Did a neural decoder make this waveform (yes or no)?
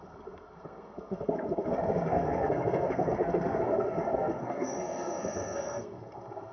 yes